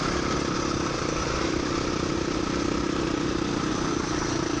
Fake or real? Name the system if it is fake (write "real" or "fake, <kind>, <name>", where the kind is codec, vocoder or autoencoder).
real